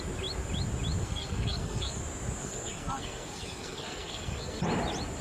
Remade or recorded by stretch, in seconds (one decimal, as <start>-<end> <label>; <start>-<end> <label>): 0.0-1.0 recorded; 1.0-2.0 remade; 2.0-2.4 recorded; 2.4-4.6 remade; 4.6-5.2 recorded